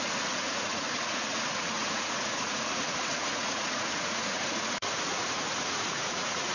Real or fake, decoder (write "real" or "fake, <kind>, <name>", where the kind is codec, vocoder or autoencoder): fake, vocoder, Vocos